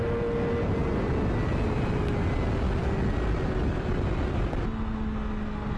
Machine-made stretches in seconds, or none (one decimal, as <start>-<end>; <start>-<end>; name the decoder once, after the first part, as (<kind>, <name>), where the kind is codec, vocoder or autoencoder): none

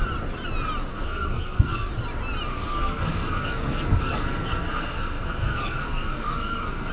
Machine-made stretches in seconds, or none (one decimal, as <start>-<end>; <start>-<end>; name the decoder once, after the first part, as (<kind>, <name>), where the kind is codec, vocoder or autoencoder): 0.9-1.9 (codec, SNAC); 2.5-6.9

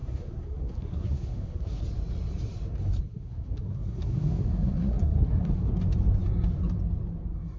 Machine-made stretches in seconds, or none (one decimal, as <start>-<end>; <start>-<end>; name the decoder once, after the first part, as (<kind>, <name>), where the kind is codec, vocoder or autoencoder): 0.0-1.8 (codec, SNAC); 3.1-5.7

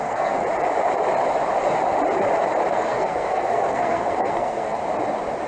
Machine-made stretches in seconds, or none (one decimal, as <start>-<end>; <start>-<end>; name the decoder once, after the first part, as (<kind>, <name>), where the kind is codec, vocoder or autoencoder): 0.0-0.4 (codec, SNAC); 2.7-4.8